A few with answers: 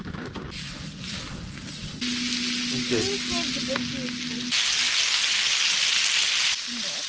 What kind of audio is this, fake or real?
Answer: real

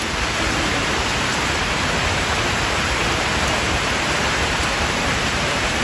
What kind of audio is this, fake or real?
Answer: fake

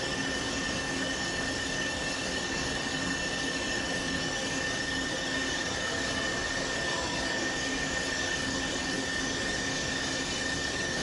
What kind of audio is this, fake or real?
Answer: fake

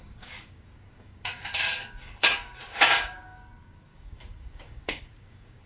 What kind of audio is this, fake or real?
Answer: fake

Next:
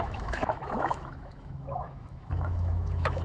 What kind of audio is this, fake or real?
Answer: fake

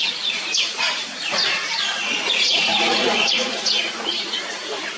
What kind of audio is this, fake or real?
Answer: fake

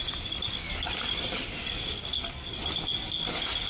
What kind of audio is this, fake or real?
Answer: real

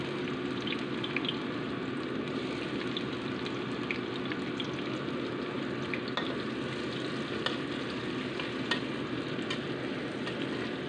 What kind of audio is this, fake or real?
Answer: real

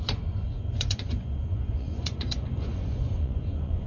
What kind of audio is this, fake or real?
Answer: fake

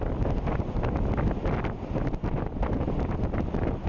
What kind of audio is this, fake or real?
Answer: real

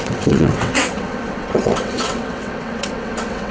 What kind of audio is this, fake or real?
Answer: fake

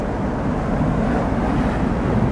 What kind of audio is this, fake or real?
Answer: real